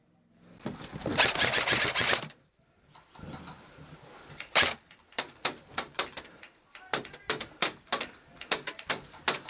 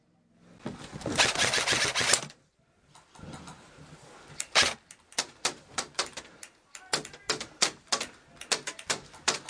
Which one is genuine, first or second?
second